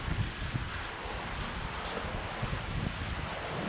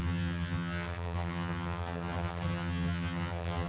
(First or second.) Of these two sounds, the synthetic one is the second